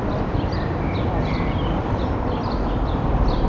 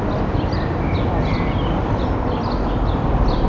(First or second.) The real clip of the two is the second